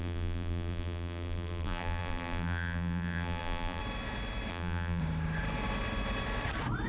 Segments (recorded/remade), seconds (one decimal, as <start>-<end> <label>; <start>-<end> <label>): 0.0-3.8 remade; 3.8-4.5 recorded; 4.5-5.0 remade; 5.0-6.9 recorded

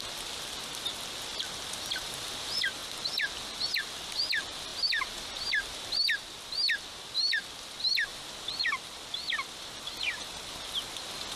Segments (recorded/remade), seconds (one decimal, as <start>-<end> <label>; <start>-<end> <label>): 0.0-11.4 recorded

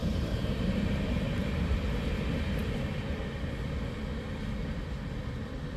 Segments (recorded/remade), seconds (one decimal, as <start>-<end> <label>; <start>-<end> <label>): 0.0-1.8 remade; 1.8-5.8 recorded

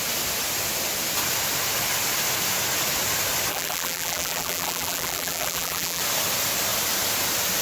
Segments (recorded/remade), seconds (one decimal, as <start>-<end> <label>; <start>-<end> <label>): 0.0-3.5 recorded; 3.5-6.0 remade; 6.0-7.6 recorded

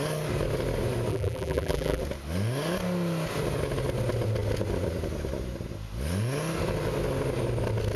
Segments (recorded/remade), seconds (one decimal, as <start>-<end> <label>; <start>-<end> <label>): 0.0-1.1 recorded; 1.1-2.0 remade; 2.0-8.0 recorded